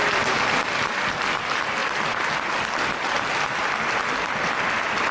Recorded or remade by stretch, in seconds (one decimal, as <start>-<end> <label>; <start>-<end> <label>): 0.0-5.1 recorded